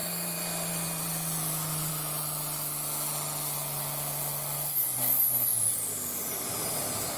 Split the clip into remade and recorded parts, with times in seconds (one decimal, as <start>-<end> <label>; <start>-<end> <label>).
0.0-1.9 remade; 1.9-5.5 recorded; 5.5-7.2 remade